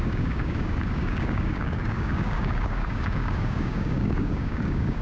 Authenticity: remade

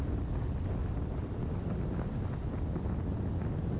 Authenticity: recorded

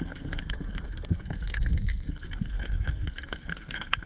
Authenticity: remade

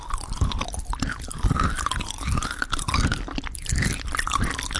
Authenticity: recorded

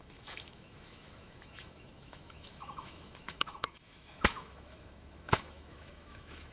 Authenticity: remade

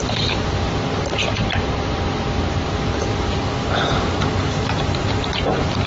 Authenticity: remade